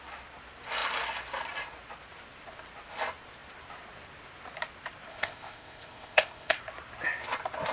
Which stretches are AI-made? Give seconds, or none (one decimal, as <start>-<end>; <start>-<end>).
5.1-6.6